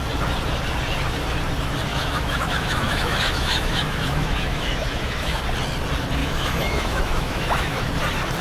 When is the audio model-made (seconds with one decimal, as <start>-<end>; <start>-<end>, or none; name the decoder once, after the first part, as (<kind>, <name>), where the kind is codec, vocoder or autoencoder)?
1.9-5.4 (autoencoder, DAC-VAE); 6.2-7.9